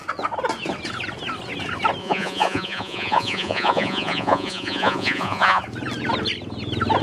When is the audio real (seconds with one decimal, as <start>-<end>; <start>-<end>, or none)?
0.0-2.0; 5.6-7.0